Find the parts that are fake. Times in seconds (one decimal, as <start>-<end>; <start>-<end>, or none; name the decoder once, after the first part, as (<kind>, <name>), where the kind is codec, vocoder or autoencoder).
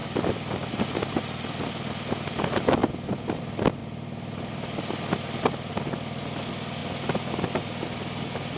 0.0-0.7 (vocoder, BigVGAN v2); 2.8-3.4